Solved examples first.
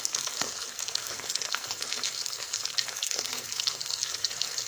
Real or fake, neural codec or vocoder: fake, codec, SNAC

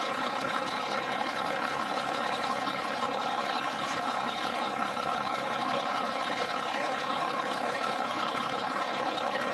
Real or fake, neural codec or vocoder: fake, codec, HILCodec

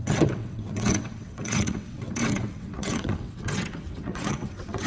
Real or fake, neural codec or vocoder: fake, vocoder, WaveNeXt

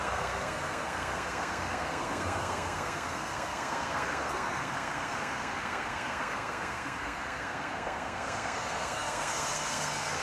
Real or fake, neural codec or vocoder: fake, codec, SNAC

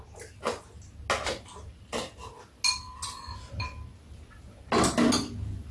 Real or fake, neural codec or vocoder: real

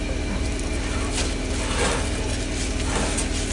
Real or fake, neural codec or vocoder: real